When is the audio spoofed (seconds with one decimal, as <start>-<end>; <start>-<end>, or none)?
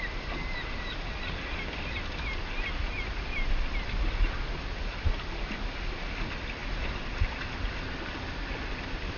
none